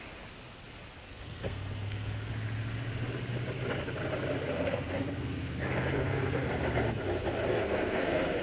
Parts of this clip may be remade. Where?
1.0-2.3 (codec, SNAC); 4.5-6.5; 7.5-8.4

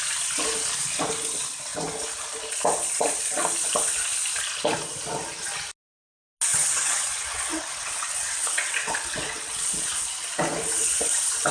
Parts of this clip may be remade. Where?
6.5-9.7 (vocoder, WaveNeXt)

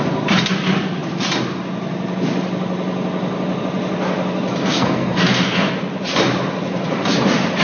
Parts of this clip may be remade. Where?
4.6-5.7 (codec, SNAC)

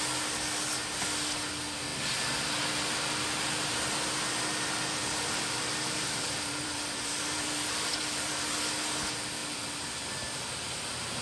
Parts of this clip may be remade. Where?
5.0-8.6 (vocoder, BigVGAN v2); 9.4-10.4